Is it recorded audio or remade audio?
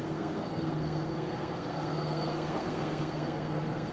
remade